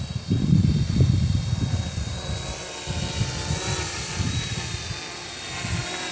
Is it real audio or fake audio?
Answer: real